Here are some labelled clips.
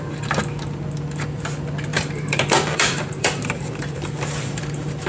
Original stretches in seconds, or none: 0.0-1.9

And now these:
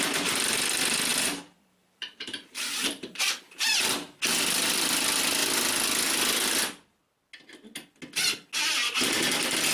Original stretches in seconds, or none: 0.0-1.1; 3.3-9.7

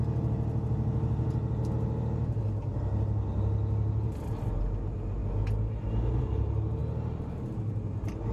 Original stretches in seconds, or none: 0.0-8.3

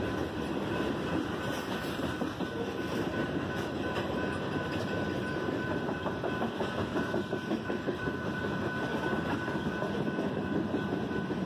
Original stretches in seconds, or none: 0.0-3.2; 8.4-11.5

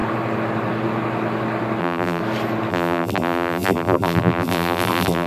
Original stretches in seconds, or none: 0.0-1.8; 2.2-2.7

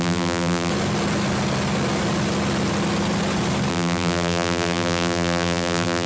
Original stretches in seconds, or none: 0.7-3.7

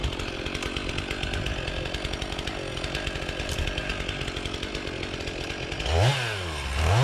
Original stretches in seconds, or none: 0.0-7.0